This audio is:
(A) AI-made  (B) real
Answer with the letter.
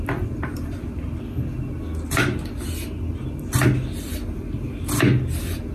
B